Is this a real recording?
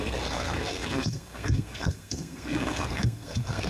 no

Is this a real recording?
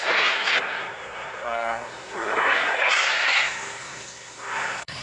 no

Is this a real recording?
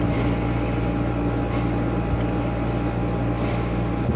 yes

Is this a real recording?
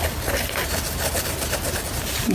yes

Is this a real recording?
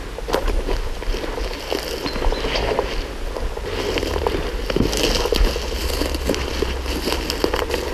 yes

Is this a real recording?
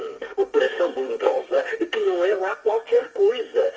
no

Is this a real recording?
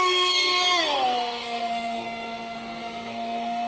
no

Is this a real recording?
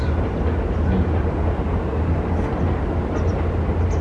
yes